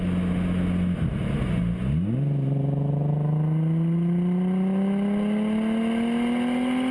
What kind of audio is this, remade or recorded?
recorded